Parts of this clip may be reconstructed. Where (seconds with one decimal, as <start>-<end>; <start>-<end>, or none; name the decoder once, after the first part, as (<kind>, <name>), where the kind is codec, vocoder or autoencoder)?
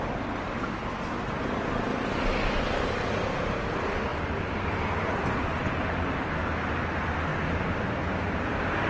none